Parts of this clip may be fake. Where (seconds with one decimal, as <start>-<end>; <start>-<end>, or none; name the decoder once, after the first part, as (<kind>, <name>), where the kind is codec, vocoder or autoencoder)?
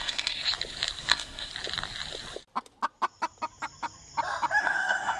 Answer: 0.0-0.4 (codec, SNAC); 1.1-1.5; 4.6-5.2